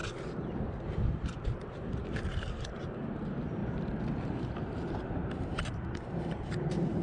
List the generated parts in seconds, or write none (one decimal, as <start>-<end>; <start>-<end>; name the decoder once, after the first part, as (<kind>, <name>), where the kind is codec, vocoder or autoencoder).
0.7-3.6 (vocoder, BigVGAN v2); 4.4-7.0